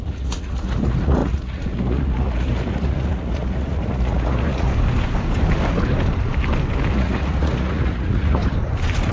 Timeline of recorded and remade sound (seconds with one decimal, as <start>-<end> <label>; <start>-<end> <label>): 0.0-4.7 remade; 4.7-6.9 recorded; 6.9-8.4 remade; 8.4-9.1 recorded